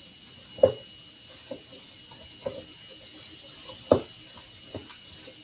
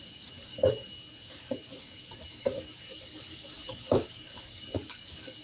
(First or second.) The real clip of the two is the first